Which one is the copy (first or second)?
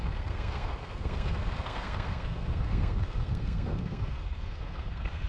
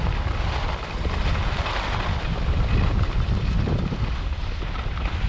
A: first